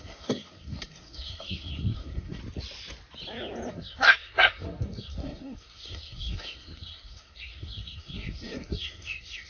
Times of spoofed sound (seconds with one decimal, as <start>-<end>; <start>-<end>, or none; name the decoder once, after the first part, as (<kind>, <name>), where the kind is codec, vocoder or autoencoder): 0.0-2.4 (codec, SNAC); 3.7-9.5